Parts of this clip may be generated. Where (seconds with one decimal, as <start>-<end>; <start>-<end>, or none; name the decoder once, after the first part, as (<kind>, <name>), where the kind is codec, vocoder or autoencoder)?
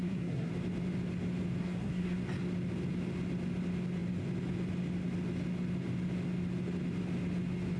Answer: 0.0-0.5 (codec, SNAC); 1.6-2.2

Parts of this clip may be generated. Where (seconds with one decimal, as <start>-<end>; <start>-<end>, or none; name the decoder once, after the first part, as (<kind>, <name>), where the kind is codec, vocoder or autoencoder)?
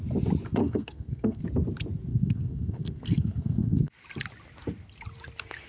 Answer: 0.6-1.4 (codec, SNAC); 2.1-3.9